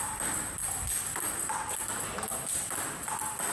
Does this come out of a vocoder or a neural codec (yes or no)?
no